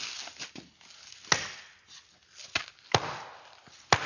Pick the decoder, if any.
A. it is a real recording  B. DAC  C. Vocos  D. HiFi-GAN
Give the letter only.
A